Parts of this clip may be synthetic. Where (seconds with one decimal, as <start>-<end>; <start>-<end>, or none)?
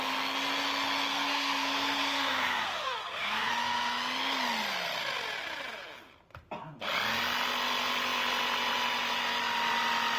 1.1-3.5